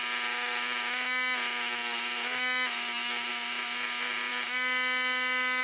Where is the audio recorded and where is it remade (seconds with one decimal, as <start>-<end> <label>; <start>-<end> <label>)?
0.0-5.6 recorded